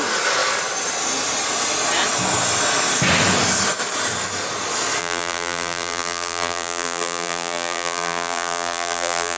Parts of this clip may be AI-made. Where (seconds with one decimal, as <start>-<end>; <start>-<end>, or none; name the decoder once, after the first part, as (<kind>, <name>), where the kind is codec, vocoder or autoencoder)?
5.0-9.4 (vocoder, BigVGAN v2)